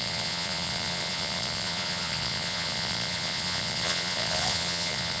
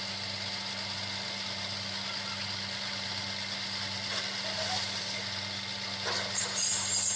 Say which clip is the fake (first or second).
first